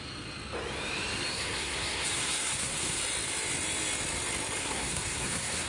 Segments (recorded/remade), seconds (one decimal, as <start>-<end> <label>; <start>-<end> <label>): 0.0-1.3 recorded; 1.3-3.0 remade; 3.0-4.6 recorded; 4.6-5.7 remade